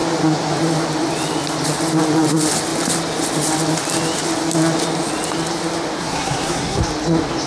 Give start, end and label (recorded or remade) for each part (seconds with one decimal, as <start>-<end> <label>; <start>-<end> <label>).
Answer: 0.0-6.0 recorded; 6.0-6.8 remade; 6.8-7.5 recorded